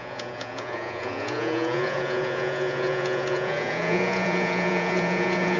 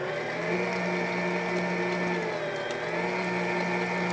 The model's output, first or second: first